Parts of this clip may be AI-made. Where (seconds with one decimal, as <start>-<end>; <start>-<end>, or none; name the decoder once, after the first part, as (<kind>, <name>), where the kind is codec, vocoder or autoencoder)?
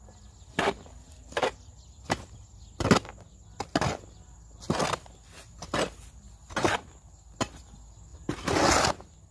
none